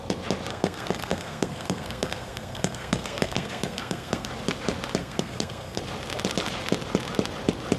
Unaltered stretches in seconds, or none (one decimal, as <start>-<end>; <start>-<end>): 0.0-0.5; 4.3-5.0; 5.8-7.8